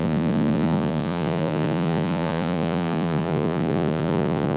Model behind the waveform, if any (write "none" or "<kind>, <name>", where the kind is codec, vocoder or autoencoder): vocoder, Vocos